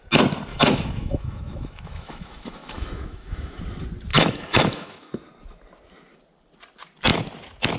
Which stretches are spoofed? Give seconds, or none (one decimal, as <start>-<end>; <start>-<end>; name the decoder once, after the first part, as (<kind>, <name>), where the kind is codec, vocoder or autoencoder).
0.5-3.6 (autoencoder, DAC-VAE); 4.1-5.1